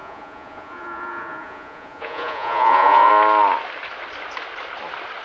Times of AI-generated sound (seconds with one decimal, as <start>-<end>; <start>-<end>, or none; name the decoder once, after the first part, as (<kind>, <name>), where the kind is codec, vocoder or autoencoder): 0.0-3.1 (vocoder, Vocos)